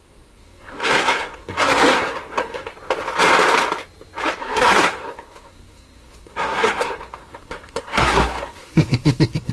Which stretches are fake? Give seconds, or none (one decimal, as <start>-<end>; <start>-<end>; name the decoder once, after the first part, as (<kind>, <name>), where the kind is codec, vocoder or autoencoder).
0.0-2.7 (codec, SNAC); 4.4-9.5